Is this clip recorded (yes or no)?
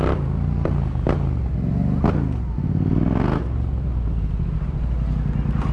yes